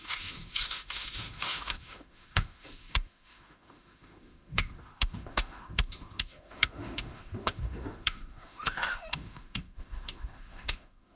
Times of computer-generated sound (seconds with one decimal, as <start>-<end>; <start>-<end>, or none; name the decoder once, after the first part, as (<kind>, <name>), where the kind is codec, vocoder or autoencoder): 0.0-11.2 (autoencoder, DAC-VAE)